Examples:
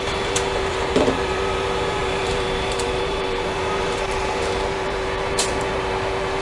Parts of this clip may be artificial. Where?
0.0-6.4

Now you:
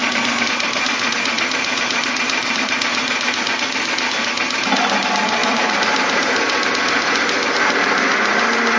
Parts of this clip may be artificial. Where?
0.0-3.5; 5.4-6.7

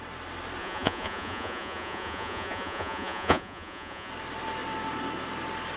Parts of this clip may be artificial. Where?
0.6-4.1

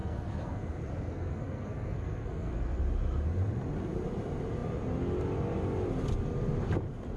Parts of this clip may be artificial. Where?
0.0-2.8

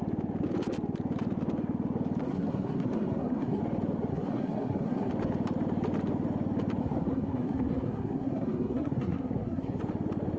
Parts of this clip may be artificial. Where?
2.2-3.6; 4.1-5.1; 6.8-9.8